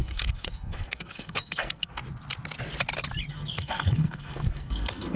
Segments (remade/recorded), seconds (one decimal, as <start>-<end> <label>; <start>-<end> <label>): 0.0-2.0 remade; 2.0-3.3 recorded; 3.3-5.2 remade